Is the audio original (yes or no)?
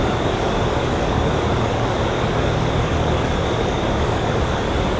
no